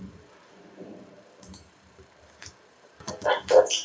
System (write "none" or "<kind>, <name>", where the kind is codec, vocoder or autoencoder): vocoder, BigVGAN v2